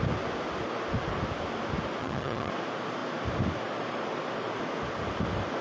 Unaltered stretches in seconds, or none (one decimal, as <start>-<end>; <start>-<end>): 0.0-2.0; 2.5-5.6